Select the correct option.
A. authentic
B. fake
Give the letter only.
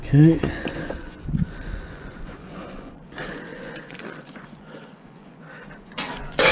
B